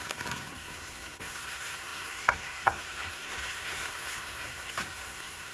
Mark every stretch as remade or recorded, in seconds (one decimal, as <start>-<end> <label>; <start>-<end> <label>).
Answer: 0.0-5.5 remade